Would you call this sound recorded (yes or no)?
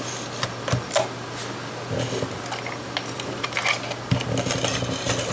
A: yes